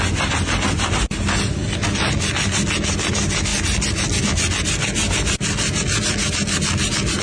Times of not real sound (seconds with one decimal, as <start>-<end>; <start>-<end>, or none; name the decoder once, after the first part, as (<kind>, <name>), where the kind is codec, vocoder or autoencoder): none